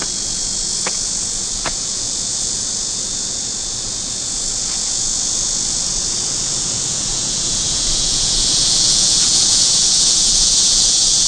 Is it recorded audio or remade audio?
remade